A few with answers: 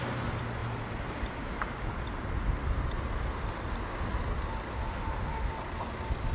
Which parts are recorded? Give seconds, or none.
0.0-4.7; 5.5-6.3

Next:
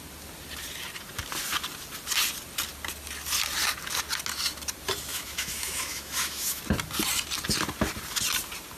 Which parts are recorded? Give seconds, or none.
0.0-5.1; 6.6-8.8

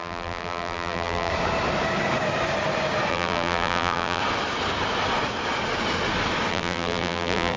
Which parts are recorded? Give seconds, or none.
1.3-3.1; 4.2-6.5

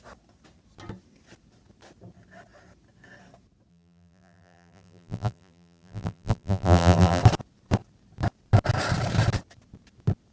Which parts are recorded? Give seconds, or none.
0.0-3.7; 7.2-10.3

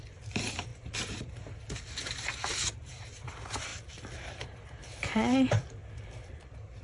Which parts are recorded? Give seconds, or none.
3.7-4.2; 5.8-6.8

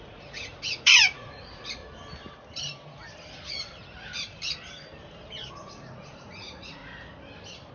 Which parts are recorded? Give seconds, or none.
1.8-5.5; 6.8-7.7

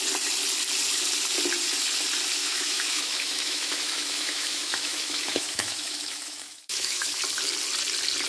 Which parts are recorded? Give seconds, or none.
0.0-2.4; 7.2-8.3

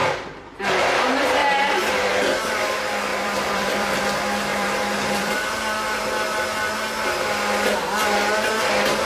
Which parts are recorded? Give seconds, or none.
0.6-3.1; 4.0-4.5; 6.0-9.1